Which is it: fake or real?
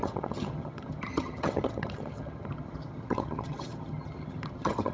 fake